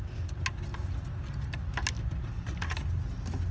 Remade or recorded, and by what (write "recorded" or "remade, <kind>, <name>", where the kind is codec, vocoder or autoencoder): recorded